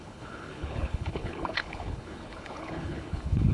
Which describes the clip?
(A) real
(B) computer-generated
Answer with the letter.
B